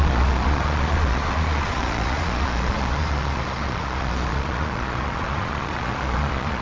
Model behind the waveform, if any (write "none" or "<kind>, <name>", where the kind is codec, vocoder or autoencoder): vocoder, Vocos